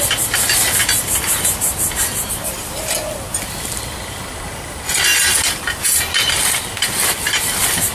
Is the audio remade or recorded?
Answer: recorded